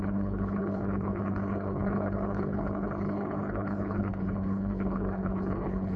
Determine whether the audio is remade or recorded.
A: remade